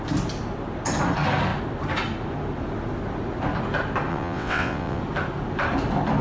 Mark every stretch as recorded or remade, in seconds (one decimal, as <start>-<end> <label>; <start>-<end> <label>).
0.0-4.1 recorded; 4.1-5.0 remade; 5.0-6.2 recorded